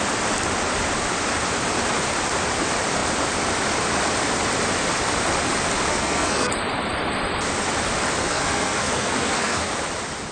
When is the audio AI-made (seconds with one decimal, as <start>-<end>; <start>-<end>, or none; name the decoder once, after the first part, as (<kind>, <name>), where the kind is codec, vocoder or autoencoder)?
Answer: 5.9-6.5 (codec, SNAC); 8.2-9.7

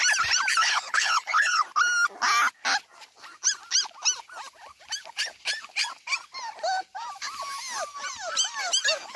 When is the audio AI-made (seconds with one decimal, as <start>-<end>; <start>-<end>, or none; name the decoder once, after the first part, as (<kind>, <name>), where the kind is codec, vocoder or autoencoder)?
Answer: 0.6-1.6 (codec, HILCodec)

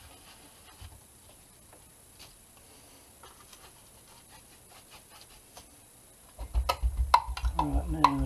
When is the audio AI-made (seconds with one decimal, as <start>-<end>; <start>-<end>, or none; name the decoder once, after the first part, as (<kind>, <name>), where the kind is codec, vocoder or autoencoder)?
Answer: none